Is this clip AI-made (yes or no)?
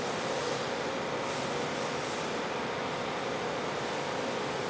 no